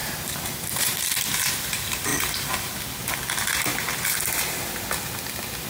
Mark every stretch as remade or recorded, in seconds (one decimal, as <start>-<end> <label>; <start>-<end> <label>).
0.0-1.0 remade; 1.0-2.1 recorded; 2.1-2.8 remade; 2.8-5.7 recorded